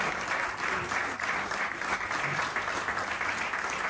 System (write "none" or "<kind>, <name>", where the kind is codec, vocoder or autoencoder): none